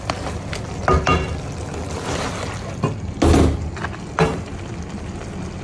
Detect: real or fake real